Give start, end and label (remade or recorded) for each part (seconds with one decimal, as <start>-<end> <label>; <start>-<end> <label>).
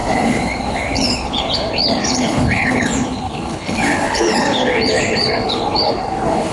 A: 0.0-6.5 remade